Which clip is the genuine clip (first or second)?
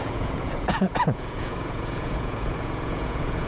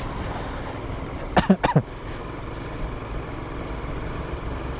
second